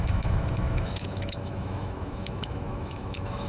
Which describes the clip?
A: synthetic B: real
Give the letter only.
A